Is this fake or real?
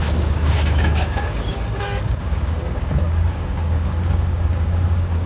fake